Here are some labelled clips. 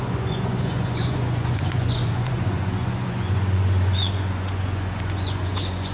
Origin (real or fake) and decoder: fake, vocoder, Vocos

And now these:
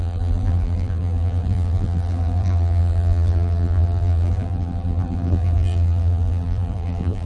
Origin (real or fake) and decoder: fake, vocoder, BigVGAN v2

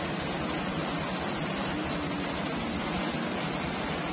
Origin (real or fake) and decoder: real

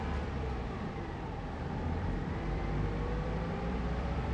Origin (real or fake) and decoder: fake, vocoder, BigVGAN v2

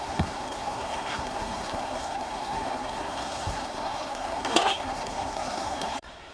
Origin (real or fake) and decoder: fake, codec, SNAC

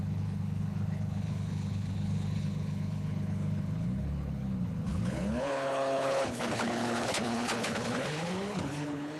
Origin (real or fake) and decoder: fake, codec, HILCodec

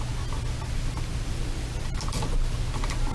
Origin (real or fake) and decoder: real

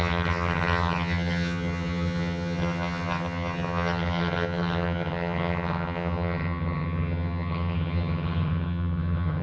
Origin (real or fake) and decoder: fake, vocoder, HiFi-GAN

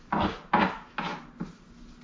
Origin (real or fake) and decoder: real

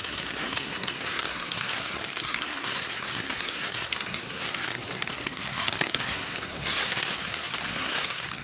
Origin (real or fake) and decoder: fake, codec, SNAC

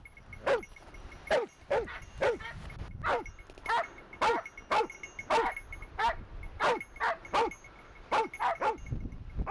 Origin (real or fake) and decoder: real